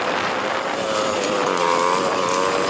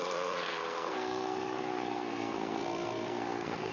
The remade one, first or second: second